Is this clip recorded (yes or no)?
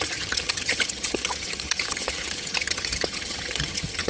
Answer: no